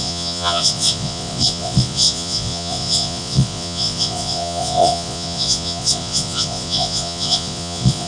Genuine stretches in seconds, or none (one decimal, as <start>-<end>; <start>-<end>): none